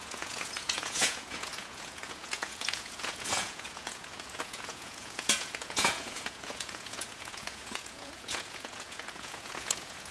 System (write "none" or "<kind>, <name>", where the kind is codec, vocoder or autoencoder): vocoder, Vocos